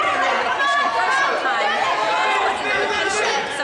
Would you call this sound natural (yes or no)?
yes